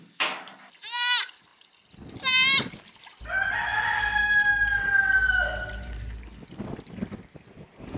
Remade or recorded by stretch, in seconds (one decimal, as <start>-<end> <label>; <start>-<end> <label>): 0.0-8.0 recorded